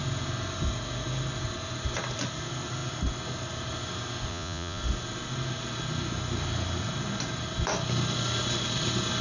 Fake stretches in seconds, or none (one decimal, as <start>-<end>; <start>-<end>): 4.3-4.8